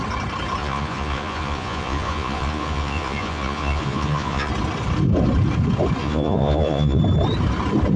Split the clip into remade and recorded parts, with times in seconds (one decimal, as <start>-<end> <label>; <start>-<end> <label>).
0.0-0.6 recorded; 0.6-4.5 remade; 4.5-6.0 recorded; 6.0-7.0 remade; 7.0-8.0 recorded

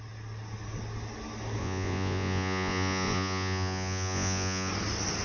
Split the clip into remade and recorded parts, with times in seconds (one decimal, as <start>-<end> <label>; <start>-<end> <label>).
0.0-1.6 recorded; 1.6-4.7 remade; 4.7-5.2 recorded

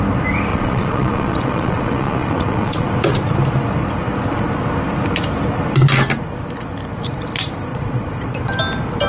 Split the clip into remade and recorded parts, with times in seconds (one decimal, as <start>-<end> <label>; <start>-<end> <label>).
0.0-0.5 recorded; 0.5-2.9 remade; 2.9-7.7 recorded; 7.7-8.5 remade; 8.5-9.1 recorded

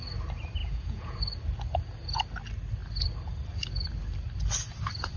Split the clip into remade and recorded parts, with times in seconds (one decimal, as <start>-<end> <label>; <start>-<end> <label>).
0.0-0.6 recorded; 0.6-1.2 remade; 1.2-5.2 recorded

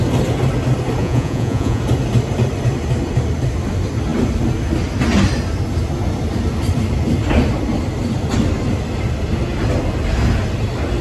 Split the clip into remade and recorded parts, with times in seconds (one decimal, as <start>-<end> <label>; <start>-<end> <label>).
0.0-1.0 recorded; 1.0-1.8 remade; 1.8-11.0 recorded

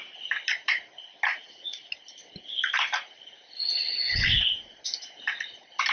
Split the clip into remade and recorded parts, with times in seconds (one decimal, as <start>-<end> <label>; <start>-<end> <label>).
0.0-1.3 recorded; 1.3-1.9 remade; 1.9-4.0 recorded; 4.0-4.5 remade; 4.5-5.9 recorded